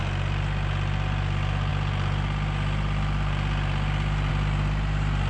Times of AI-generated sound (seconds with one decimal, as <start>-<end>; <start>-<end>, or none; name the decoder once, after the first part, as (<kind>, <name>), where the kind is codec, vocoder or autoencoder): none